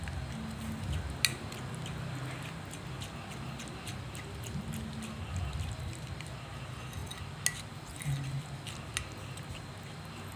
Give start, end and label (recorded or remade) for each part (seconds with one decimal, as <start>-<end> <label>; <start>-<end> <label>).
0.0-10.4 recorded